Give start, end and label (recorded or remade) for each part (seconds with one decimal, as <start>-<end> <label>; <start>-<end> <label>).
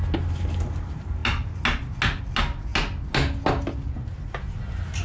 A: 0.0-5.0 recorded